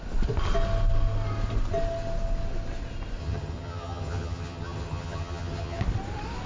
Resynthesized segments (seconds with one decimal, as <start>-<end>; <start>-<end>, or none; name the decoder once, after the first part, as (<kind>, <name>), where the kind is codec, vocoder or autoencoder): 3.2-5.8 (vocoder, HiFi-GAN)